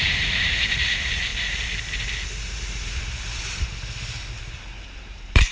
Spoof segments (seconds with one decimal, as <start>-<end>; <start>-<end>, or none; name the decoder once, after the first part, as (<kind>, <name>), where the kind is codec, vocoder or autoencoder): 0.0-1.3 (vocoder, BigVGAN v2); 4.4-5.5